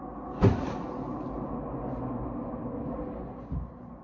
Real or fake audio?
real